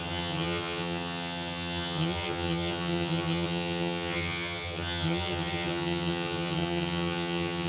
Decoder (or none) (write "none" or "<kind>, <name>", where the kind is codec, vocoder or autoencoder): vocoder, HiFi-GAN